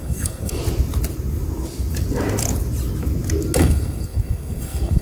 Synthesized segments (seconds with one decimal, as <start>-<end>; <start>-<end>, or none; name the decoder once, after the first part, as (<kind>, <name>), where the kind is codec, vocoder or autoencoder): 0.0-0.6 (codec, SNAC); 3.6-5.0